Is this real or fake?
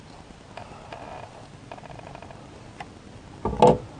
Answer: real